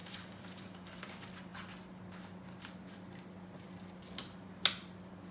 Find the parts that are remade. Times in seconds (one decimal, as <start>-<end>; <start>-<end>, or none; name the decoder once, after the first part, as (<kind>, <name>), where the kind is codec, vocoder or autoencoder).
0.0-1.1 (vocoder, BigVGAN v2)